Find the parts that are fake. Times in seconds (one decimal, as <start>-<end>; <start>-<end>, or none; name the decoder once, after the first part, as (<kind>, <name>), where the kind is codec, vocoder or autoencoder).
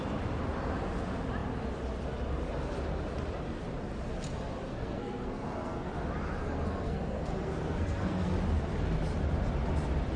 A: 4.7-5.9 (codec, SNAC); 6.4-8.3